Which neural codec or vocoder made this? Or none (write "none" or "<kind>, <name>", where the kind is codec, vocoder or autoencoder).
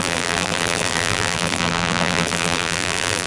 vocoder, BigVGAN v2